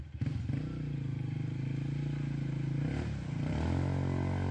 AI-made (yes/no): no